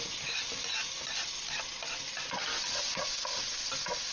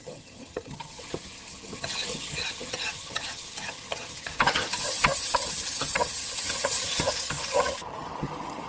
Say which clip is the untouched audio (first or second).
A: first